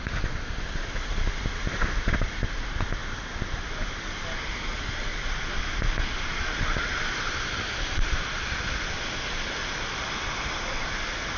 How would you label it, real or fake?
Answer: real